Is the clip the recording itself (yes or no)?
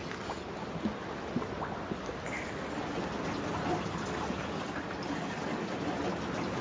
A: yes